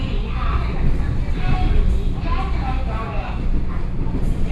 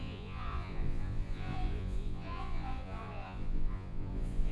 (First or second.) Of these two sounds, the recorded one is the first